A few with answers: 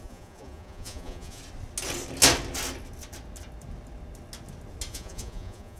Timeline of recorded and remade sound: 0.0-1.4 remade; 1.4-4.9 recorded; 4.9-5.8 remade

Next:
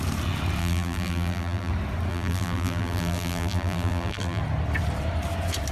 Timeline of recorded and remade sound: 0.0-0.6 recorded; 0.6-1.7 remade; 1.7-2.1 recorded; 2.1-4.4 remade; 4.4-5.7 recorded

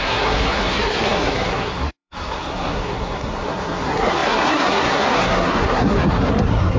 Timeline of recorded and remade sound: 0.0-6.8 remade